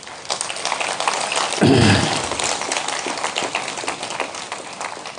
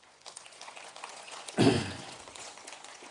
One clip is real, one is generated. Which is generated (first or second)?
second